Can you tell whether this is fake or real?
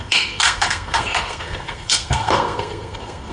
fake